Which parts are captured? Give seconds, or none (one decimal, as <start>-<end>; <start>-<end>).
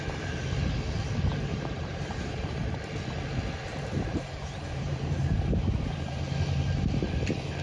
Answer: 0.0-1.5; 2.8-4.1; 6.2-7.6